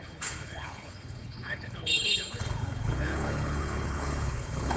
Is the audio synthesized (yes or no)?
yes